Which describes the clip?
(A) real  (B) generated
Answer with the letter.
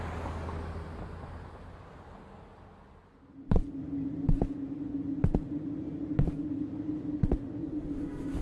A